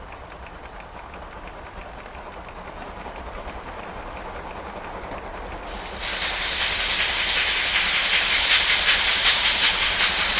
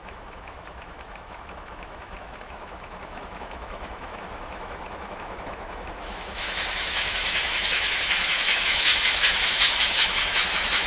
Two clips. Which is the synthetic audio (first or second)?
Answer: second